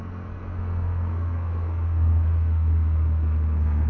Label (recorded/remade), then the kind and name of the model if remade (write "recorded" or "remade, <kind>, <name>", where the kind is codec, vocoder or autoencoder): remade, codec, SNAC